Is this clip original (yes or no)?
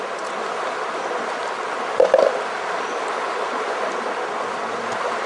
yes